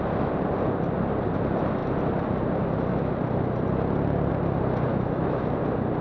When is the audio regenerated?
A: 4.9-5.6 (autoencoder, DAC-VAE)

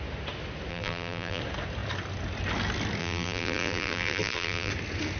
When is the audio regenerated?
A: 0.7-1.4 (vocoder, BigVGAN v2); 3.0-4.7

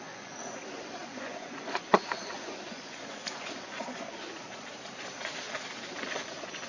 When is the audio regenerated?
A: 0.0-4.6 (vocoder, Vocos); 6.1-6.7